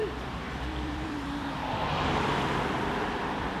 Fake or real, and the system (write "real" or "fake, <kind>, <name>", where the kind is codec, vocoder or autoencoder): fake, vocoder, BigVGAN v2